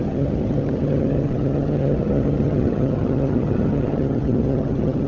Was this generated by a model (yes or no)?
yes